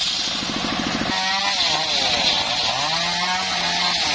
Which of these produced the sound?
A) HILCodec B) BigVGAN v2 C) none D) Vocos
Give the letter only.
C